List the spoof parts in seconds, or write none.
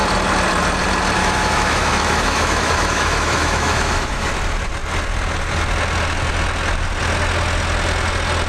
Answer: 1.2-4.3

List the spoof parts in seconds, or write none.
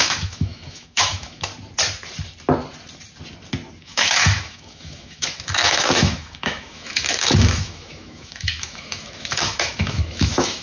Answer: 0.0-1.5; 3.8-10.6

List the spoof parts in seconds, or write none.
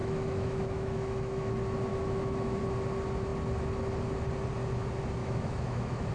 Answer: 0.0-1.5; 1.9-2.6; 5.2-6.1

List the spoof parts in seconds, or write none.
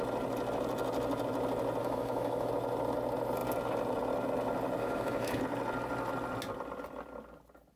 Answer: 1.8-2.5; 4.8-5.4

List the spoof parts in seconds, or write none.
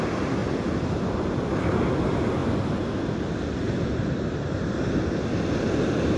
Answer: none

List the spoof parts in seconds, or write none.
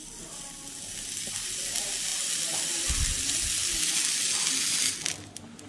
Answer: none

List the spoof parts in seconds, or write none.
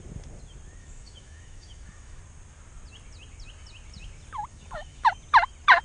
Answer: 0.8-2.2; 4.5-5.1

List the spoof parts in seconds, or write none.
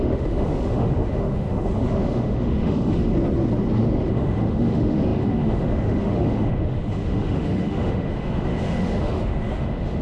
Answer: 0.0-3.1; 3.8-10.0